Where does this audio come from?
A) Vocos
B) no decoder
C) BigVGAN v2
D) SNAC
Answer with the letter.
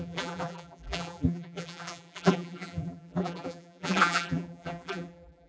C